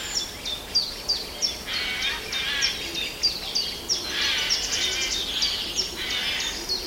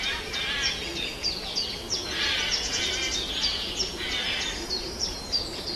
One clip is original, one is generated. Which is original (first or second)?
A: first